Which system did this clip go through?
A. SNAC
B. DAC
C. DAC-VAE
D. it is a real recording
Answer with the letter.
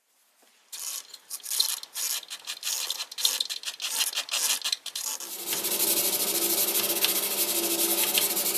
D